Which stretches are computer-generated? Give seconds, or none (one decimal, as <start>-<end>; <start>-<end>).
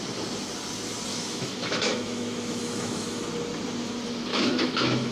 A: 1.1-3.2; 4.3-5.1